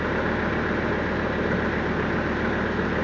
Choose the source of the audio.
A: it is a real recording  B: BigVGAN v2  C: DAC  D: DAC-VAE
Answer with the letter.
A